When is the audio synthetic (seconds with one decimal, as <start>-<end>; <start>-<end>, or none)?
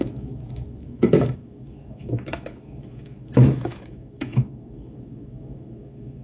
0.0-6.2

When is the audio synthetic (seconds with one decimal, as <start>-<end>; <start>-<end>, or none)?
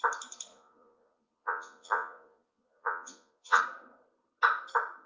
0.5-3.6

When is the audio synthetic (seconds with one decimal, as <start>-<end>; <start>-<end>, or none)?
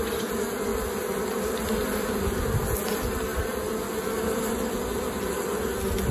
none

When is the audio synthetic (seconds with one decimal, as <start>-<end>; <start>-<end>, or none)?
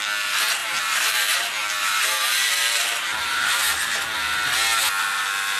0.6-4.0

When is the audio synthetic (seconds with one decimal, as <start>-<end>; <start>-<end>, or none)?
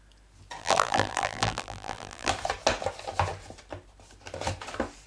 0.6-2.3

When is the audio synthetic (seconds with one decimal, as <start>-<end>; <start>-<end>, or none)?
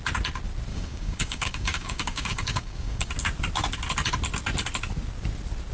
0.7-3.1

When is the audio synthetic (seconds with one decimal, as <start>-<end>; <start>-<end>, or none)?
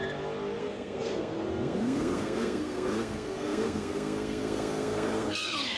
0.6-5.8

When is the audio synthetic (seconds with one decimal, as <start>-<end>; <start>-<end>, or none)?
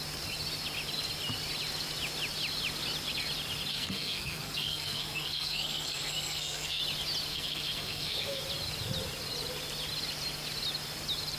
3.7-6.8; 7.3-8.4